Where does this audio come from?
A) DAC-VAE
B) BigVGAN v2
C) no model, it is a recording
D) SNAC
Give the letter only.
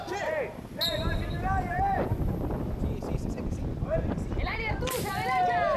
C